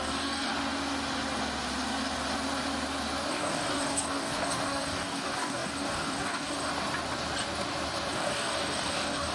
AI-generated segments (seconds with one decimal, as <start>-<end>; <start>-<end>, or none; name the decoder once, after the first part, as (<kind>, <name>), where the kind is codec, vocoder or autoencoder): 0.0-0.5 (codec, DAC); 3.3-6.7; 8.1-9.3